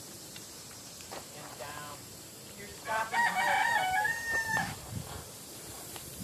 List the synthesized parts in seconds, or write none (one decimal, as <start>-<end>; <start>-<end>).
0.0-6.2